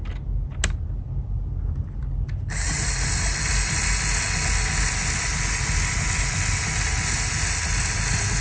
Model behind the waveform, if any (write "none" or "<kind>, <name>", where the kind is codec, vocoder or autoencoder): none